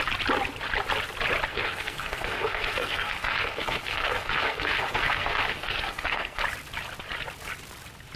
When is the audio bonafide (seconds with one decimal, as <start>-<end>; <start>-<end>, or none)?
0.0-1.5; 6.4-8.2